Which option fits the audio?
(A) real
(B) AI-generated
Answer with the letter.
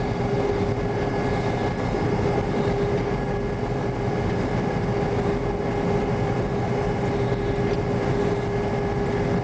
A